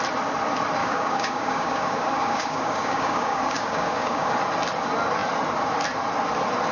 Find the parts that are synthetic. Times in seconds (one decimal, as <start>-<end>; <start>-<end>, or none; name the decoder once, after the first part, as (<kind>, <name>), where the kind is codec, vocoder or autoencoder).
0.8-4.3 (codec, DAC)